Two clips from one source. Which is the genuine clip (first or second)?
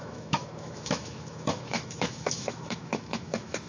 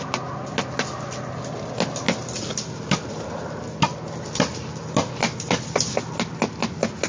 second